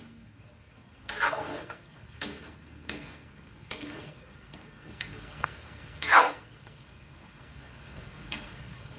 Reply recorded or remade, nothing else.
remade